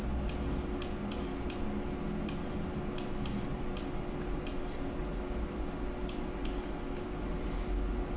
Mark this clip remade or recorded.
recorded